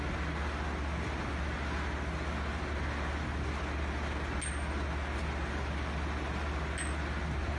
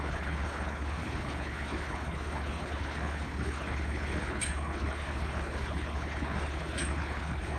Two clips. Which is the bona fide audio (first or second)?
first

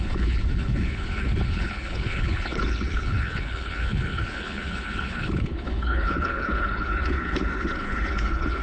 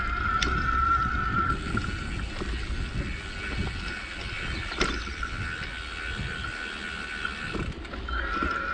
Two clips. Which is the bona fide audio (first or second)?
second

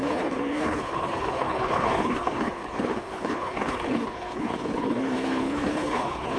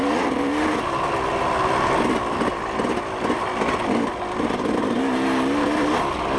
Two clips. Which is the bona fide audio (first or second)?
second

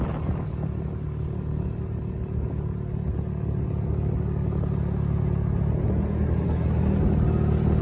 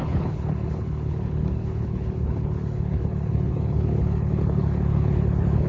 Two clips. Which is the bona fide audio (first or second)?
first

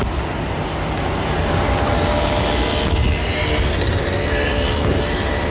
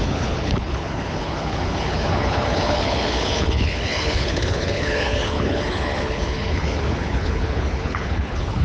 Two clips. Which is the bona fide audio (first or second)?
first